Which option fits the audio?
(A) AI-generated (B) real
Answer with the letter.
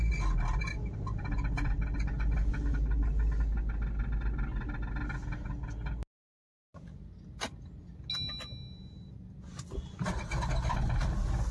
B